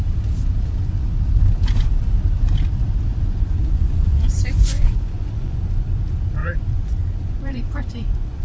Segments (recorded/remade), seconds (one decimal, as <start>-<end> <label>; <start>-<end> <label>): 0.0-3.1 recorded; 3.1-5.6 remade; 5.6-6.4 recorded; 6.4-8.4 remade